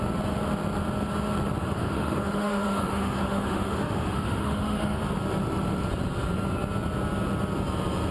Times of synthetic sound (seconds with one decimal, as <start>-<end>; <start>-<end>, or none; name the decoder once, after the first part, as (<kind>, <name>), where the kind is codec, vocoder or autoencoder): 1.6-5.0 (autoencoder, DAC-VAE)